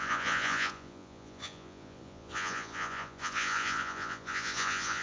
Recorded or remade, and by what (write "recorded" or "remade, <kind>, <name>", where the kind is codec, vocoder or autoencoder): remade, vocoder, Vocos